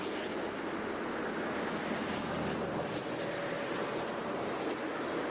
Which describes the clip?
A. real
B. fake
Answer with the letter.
A